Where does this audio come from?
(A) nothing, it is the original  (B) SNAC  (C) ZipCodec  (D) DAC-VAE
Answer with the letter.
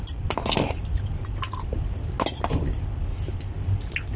A